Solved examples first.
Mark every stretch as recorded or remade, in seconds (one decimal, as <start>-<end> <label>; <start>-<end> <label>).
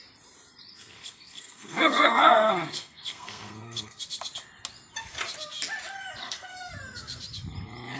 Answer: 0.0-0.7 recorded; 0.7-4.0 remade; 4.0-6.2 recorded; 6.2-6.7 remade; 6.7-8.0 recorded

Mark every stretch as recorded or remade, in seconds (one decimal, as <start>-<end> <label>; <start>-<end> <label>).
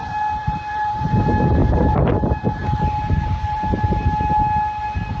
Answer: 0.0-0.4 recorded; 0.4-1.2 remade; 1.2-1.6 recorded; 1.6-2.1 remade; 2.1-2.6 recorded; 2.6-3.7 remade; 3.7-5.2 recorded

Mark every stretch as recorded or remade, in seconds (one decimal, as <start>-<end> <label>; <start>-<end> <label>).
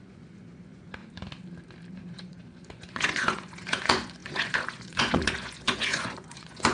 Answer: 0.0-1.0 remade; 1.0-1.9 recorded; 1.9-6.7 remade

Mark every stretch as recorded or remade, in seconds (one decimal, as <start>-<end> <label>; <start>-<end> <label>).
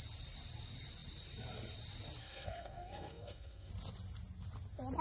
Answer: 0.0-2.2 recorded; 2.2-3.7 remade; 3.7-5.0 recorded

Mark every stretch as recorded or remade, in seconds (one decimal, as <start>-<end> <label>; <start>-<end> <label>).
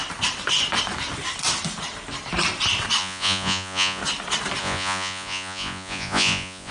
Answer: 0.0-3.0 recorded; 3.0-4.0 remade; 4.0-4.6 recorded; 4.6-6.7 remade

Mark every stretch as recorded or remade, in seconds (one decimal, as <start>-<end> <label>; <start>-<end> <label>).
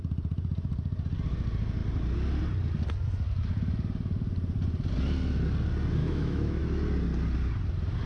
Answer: 0.0-6.0 recorded; 6.0-6.6 remade; 6.6-8.1 recorded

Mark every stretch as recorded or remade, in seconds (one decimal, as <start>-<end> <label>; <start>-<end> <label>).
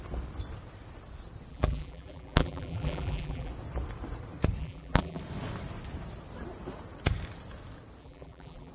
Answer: 0.0-1.5 recorded; 1.5-3.5 remade; 3.5-4.6 recorded; 4.6-5.2 remade; 5.2-8.0 recorded; 8.0-8.7 remade